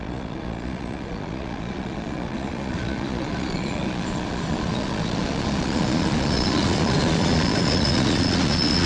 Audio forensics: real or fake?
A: fake